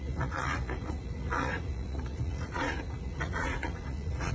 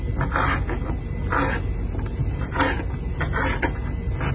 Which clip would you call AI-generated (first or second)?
first